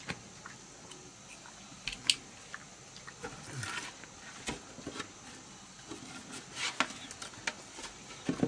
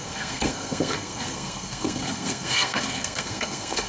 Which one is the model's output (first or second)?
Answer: second